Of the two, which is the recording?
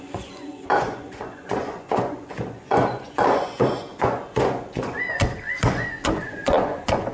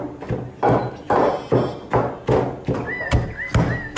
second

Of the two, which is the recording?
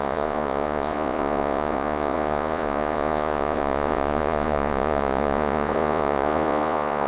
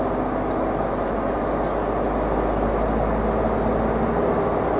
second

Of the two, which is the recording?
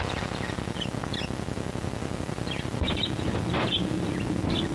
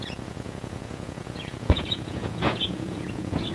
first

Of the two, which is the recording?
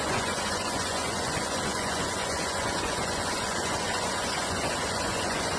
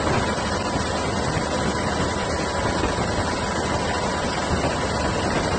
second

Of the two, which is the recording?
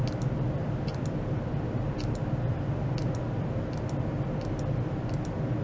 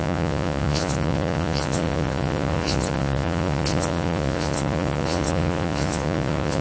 first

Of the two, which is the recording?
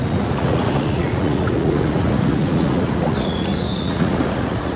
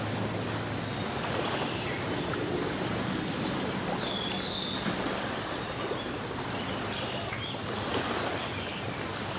second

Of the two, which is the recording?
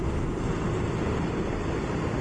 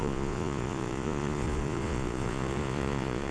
first